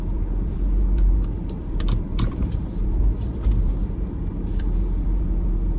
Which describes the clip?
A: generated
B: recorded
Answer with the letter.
A